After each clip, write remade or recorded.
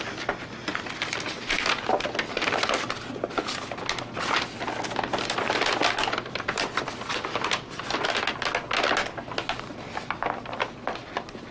recorded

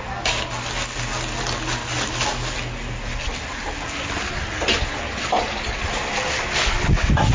recorded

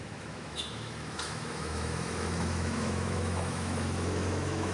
remade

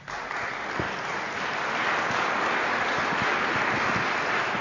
recorded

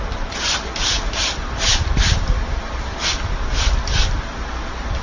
recorded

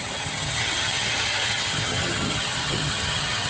remade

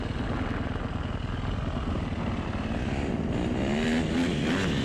recorded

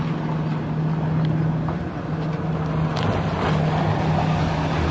recorded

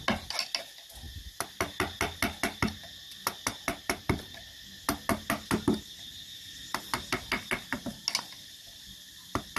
recorded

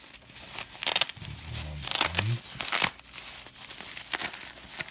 recorded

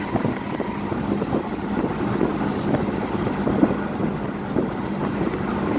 recorded